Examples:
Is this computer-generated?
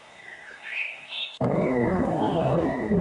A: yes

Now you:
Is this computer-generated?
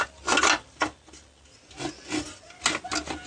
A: no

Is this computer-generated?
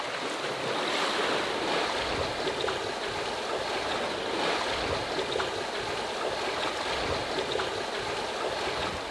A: no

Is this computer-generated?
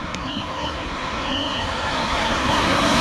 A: yes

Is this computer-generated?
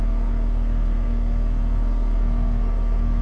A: yes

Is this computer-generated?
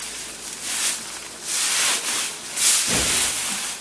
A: no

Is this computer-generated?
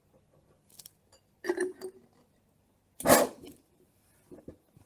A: no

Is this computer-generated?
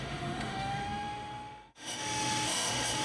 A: yes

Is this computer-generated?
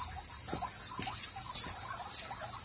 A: no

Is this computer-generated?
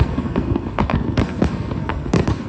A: yes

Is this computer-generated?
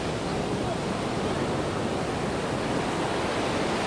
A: no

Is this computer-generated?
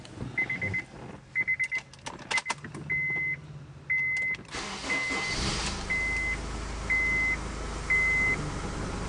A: no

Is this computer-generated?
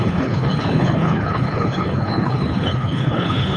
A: yes